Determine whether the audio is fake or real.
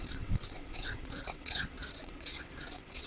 fake